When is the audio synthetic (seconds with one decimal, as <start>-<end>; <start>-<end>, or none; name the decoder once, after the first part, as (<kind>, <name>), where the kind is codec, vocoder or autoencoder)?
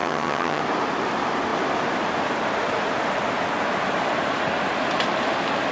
0.0-0.6 (vocoder, HiFi-GAN)